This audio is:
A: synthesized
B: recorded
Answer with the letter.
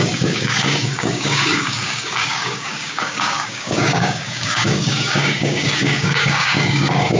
A